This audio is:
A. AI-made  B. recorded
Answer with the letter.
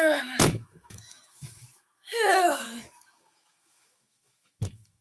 A